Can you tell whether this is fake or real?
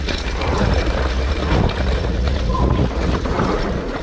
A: fake